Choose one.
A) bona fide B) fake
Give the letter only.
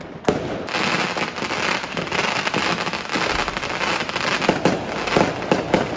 A